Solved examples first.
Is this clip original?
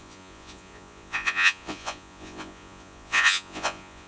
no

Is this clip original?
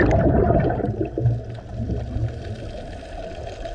yes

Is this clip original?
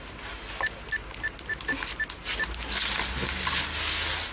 yes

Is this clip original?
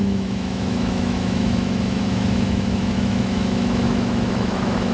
no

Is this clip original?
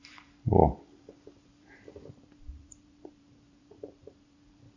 no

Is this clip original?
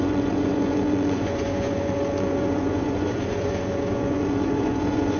no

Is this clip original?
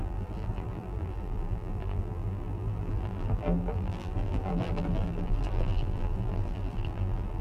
no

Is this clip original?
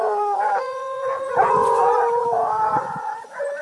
no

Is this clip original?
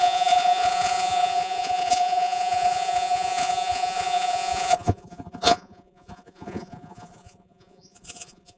no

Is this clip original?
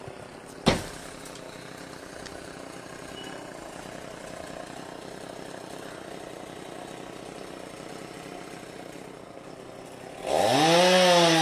yes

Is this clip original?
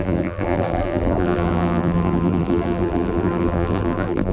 no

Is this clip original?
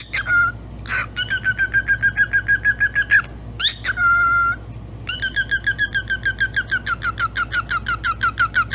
yes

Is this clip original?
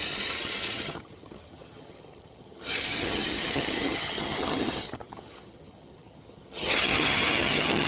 no